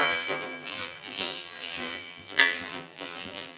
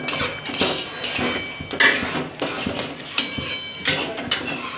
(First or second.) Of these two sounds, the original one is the second